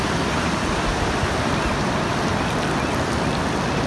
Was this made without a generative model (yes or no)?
yes